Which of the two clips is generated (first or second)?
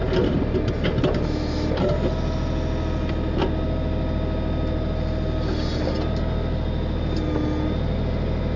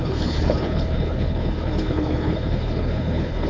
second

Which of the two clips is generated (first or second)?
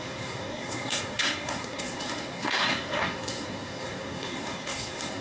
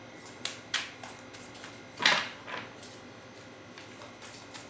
first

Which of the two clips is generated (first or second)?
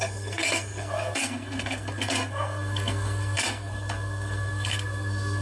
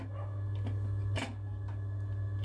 first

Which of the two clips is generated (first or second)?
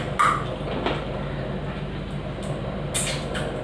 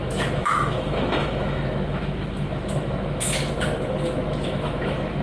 second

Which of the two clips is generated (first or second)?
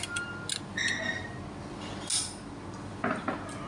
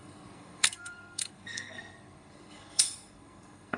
second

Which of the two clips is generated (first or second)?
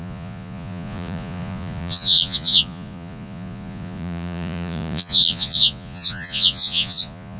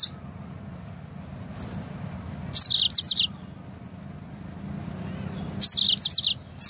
first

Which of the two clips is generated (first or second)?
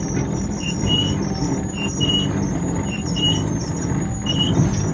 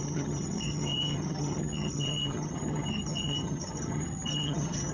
second